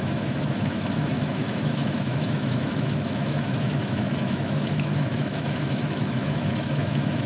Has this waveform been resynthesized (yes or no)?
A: yes